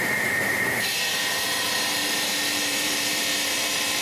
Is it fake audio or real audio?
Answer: fake